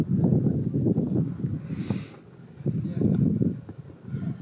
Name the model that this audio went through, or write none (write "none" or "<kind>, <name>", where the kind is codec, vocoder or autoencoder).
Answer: none